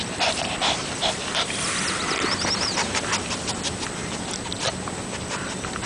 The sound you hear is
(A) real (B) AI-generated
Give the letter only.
A